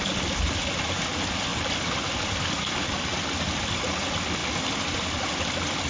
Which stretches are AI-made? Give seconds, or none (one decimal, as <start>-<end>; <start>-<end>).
none